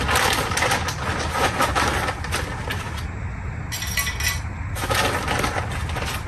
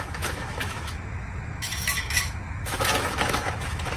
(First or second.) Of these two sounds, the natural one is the first